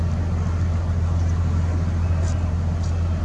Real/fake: real